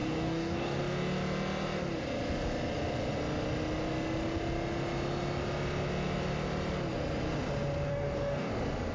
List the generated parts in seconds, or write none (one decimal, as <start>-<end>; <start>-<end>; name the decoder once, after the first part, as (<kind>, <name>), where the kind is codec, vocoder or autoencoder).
0.0-0.8 (codec, DAC); 7.9-8.5

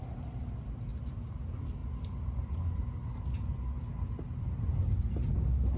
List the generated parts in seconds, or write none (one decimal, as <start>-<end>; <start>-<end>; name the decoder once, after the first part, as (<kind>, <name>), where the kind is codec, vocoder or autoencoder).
0.9-1.4 (vocoder, BigVGAN v2)

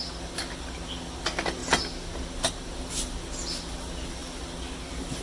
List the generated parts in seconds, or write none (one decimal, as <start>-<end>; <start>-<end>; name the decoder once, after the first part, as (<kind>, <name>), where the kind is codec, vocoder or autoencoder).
none

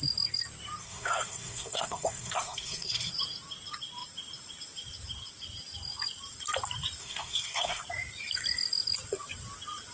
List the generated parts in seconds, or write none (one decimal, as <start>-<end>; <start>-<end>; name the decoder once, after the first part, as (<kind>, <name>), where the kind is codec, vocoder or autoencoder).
0.8-3.1 (codec, SNAC); 7.0-7.8

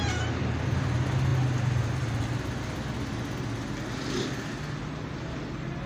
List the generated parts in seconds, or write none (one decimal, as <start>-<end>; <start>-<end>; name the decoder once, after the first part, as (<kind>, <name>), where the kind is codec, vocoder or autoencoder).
none

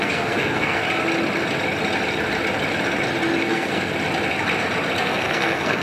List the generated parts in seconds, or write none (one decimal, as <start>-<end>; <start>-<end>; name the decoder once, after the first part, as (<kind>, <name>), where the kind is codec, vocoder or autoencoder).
0.0-0.8 (codec, SNAC); 3.4-3.9; 5.0-5.8